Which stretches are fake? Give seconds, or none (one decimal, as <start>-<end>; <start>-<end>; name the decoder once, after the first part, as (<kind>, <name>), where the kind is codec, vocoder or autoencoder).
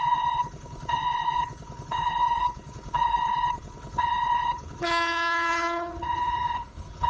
0.0-7.1 (codec, HILCodec)